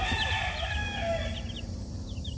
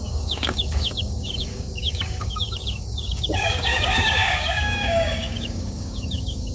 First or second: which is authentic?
first